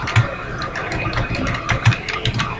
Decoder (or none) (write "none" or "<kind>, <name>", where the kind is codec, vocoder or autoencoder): none